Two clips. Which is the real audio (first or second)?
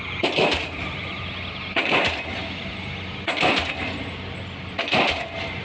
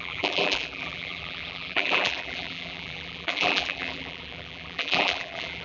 first